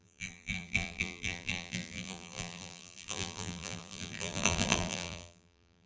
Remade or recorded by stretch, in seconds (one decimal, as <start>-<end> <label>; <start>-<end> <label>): 0.0-5.9 remade